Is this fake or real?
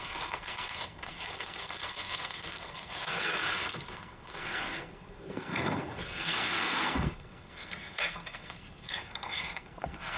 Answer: fake